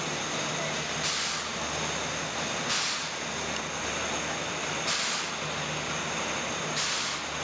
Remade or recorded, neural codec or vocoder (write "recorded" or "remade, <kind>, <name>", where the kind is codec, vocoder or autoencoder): recorded